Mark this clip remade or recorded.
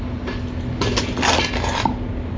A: recorded